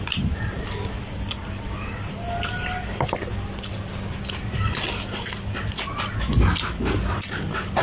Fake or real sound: real